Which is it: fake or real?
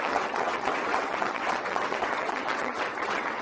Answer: fake